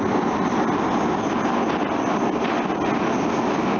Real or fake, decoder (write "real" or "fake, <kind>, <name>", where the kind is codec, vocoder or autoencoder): real